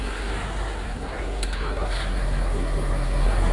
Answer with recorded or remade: remade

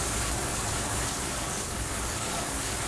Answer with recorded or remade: remade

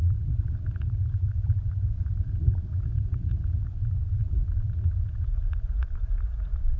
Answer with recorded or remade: remade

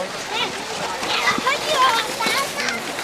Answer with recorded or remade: recorded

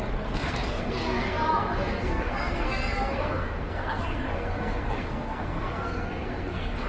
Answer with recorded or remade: remade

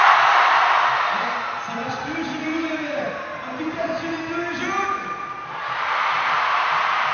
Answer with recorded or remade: recorded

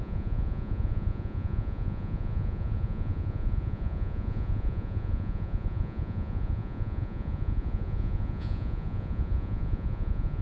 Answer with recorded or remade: remade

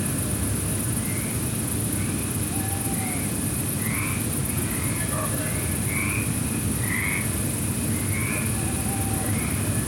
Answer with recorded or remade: recorded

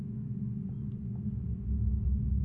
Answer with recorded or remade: recorded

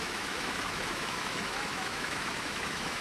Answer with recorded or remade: remade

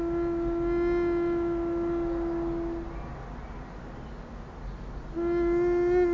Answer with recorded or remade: recorded